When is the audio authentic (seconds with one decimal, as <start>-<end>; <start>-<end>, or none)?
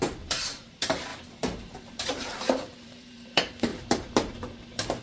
3.7-5.0